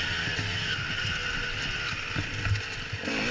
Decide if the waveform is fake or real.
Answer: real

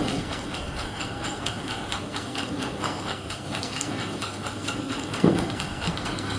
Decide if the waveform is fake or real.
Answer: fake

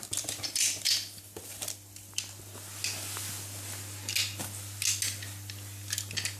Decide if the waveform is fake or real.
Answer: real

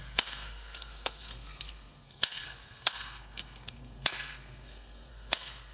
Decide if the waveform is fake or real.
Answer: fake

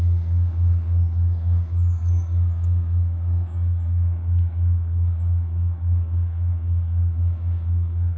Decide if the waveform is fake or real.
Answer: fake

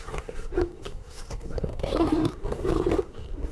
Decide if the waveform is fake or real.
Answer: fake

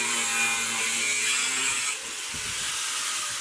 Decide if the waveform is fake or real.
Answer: real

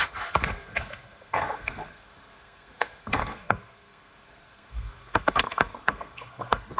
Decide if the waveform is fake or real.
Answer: fake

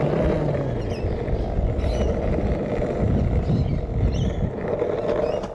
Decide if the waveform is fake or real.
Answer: real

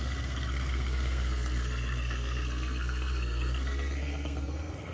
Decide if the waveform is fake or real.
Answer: fake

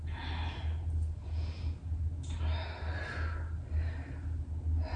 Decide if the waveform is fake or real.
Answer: real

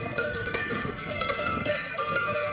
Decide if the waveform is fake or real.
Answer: fake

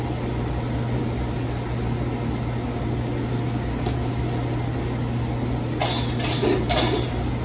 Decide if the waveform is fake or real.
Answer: real